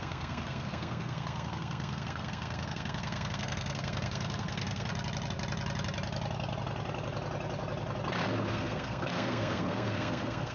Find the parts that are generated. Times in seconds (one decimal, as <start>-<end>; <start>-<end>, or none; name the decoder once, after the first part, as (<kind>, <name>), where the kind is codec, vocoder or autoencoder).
0.0-4.9 (codec, SNAC); 8.5-10.5